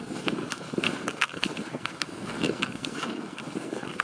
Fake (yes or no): yes